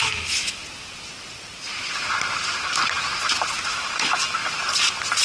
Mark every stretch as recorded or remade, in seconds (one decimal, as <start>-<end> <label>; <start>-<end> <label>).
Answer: 0.0-0.6 remade; 0.6-3.7 recorded; 3.7-4.4 remade; 4.4-5.2 recorded